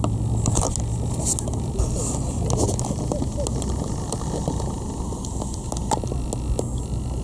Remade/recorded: recorded